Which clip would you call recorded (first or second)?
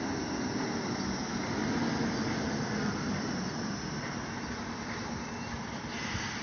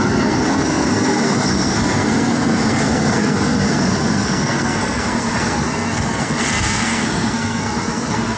first